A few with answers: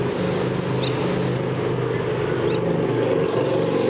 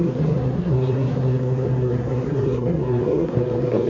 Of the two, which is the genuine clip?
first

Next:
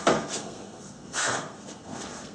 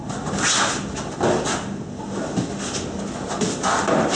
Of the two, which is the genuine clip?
second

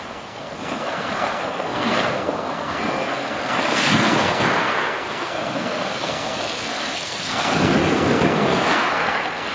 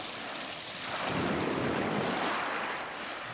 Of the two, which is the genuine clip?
second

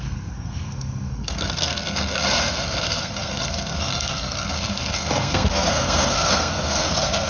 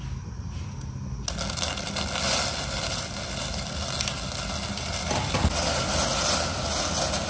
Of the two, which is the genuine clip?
second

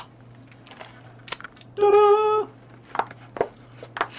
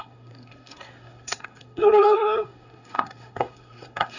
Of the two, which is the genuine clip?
first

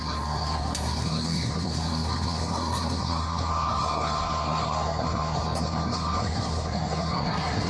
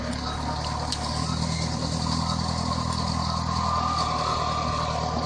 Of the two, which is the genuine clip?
second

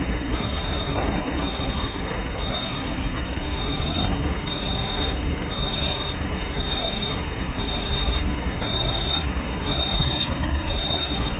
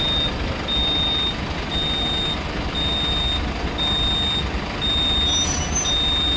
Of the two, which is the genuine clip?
second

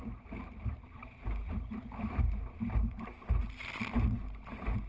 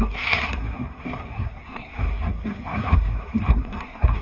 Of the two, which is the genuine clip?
first